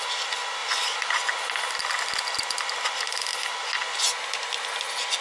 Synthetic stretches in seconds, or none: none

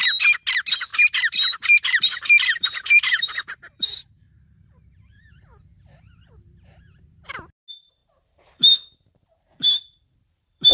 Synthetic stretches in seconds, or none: 0.9-5.3 (vocoder, BigVGAN v2); 8.0-10.7

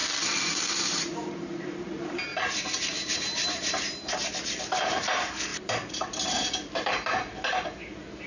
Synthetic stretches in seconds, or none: 0.9-8.3 (vocoder, BigVGAN v2)

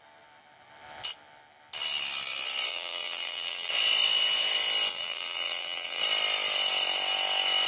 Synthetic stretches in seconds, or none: 2.7-3.7 (vocoder, BigVGAN v2); 4.9-6.0

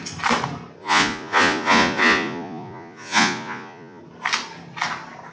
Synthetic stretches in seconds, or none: 0.8-4.0 (vocoder, Vocos)